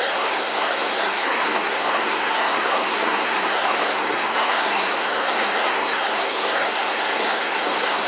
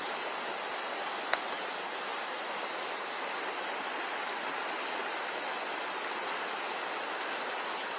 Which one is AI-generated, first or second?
first